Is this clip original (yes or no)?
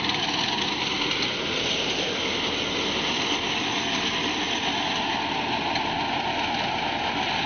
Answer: yes